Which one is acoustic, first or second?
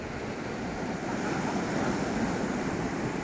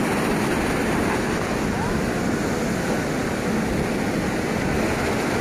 second